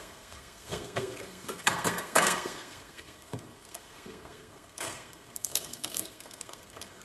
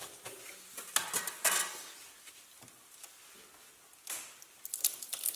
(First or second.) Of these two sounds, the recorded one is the second